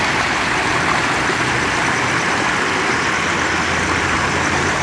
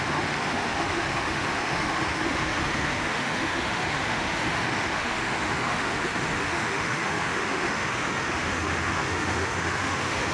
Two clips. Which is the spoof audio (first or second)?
second